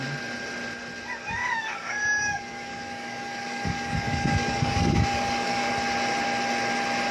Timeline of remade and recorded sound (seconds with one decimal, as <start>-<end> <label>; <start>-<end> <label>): 0.0-1.4 recorded; 1.4-5.7 remade; 5.7-7.1 recorded